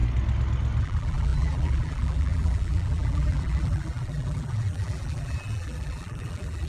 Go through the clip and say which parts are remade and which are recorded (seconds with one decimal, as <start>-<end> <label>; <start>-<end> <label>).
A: 0.0-0.8 recorded; 0.8-6.7 remade